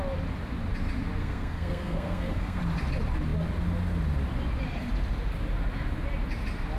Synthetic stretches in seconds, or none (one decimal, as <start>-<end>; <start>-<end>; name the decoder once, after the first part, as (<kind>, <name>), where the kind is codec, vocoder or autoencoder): 1.2-2.6 (codec, SNAC)